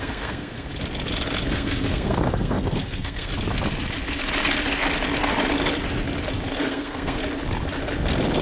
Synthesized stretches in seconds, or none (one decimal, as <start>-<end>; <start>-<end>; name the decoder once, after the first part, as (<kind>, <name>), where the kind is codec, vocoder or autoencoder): 0.0-0.7 (codec, SNAC); 1.5-3.3; 6.6-7.2